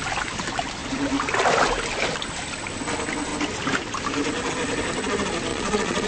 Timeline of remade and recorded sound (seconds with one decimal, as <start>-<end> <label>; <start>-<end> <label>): 0.0-5.5 recorded; 5.5-6.1 remade